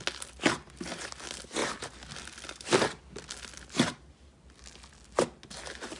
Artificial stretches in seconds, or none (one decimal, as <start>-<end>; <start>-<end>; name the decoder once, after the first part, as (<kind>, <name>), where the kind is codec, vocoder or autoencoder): none